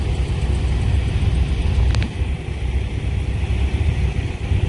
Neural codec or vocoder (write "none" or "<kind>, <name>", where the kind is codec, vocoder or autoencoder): none